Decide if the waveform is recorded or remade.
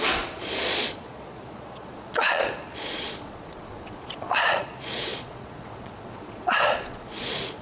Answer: remade